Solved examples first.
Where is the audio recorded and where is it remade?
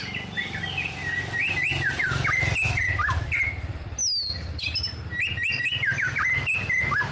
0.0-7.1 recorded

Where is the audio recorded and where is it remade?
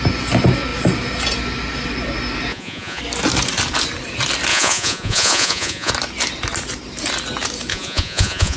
0.0-2.5 recorded; 2.5-3.0 remade; 3.0-4.5 recorded; 4.5-5.9 remade; 5.9-7.7 recorded; 7.7-8.6 remade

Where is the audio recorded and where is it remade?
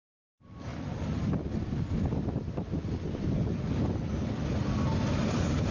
0.0-5.7 recorded